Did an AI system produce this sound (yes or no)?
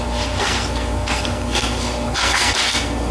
yes